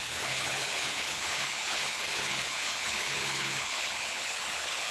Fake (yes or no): yes